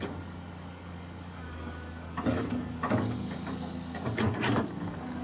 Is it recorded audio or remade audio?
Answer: remade